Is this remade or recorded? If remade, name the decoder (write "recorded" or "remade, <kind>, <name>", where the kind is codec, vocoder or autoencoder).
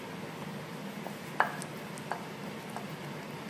recorded